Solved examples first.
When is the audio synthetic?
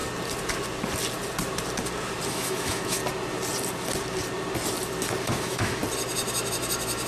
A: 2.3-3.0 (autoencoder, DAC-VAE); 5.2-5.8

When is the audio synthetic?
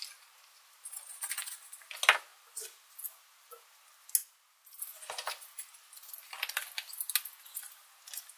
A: none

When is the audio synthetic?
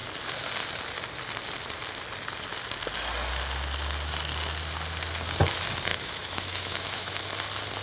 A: 5.9-7.2 (autoencoder, DAC-VAE)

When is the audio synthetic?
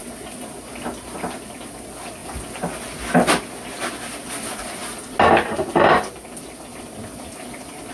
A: none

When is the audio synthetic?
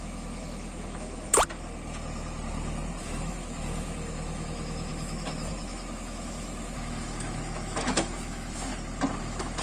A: 0.0-1.3 (autoencoder, DAC-VAE); 3.0-8.7; 9.2-9.6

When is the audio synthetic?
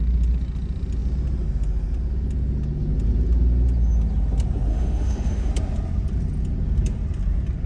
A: 4.7-5.5 (autoencoder, DAC-VAE)